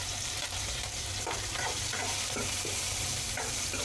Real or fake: fake